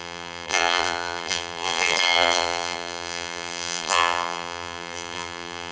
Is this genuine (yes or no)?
no